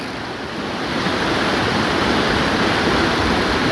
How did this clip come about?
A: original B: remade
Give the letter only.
A